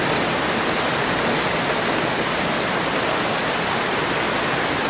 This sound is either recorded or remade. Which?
recorded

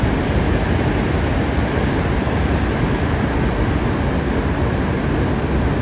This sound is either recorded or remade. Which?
recorded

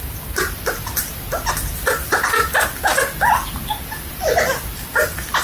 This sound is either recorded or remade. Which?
recorded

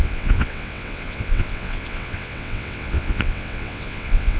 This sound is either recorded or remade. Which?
remade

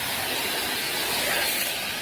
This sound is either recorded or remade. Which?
remade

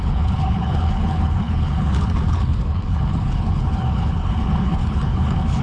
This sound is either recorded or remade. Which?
remade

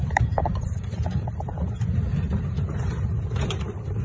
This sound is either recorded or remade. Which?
remade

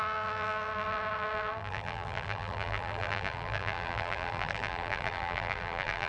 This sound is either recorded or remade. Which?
remade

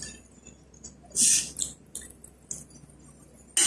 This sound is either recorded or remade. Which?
recorded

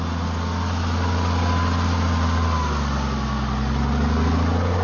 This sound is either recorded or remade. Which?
recorded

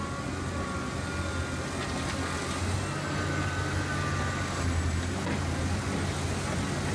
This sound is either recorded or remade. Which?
recorded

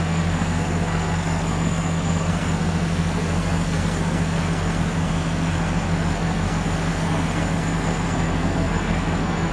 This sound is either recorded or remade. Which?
remade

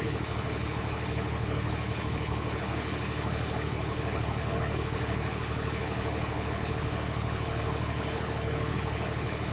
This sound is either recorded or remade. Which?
remade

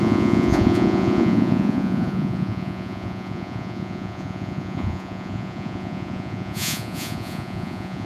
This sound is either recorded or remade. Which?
remade